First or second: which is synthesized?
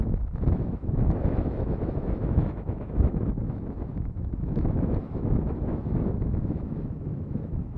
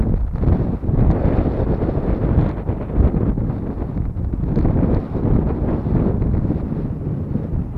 first